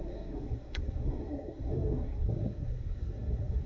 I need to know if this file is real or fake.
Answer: fake